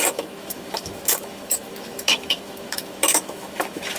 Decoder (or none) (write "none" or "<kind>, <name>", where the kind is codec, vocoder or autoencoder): autoencoder, DAC-VAE